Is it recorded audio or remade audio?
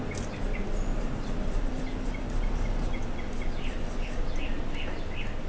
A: recorded